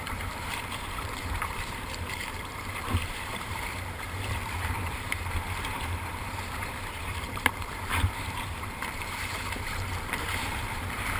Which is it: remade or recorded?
remade